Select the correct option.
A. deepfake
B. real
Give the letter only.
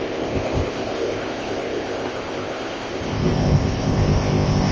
A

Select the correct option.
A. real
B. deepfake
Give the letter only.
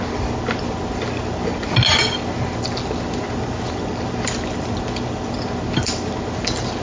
A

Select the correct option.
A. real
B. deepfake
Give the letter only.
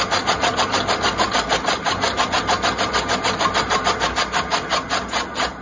A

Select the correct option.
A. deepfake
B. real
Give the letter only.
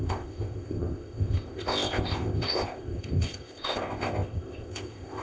A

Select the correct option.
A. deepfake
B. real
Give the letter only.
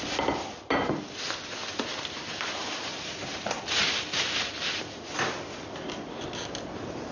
B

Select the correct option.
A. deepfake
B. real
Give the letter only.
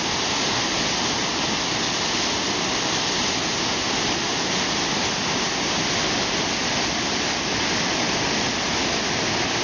B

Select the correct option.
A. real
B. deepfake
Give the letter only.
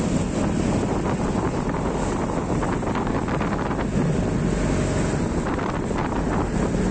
A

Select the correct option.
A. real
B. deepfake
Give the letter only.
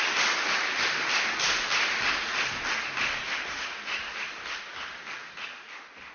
A